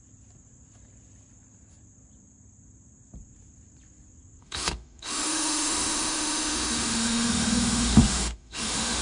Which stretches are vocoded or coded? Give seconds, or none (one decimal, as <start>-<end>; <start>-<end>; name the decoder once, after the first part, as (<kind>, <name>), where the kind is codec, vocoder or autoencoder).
4.4-9.0 (autoencoder, DAC-VAE)